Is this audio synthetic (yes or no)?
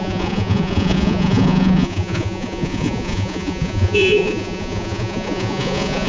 yes